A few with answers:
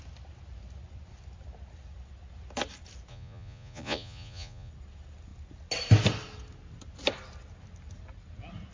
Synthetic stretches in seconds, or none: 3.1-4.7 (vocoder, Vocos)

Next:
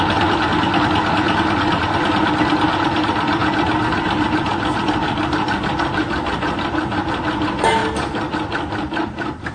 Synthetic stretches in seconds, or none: 7.8-9.5 (vocoder, BigVGAN v2)

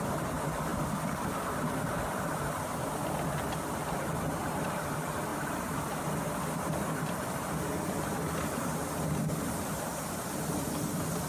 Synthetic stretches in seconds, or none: none

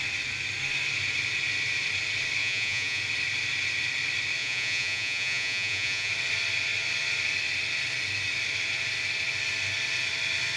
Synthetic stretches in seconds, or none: 2.4-3.0 (vocoder, Vocos); 4.4-6.1

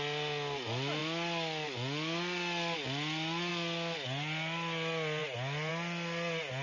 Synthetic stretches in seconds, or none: none

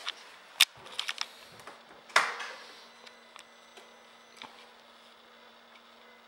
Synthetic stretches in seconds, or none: none

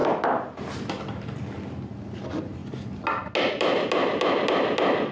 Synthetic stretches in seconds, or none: none

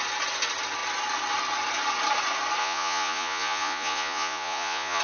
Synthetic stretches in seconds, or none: 2.6-5.0 (vocoder, Vocos)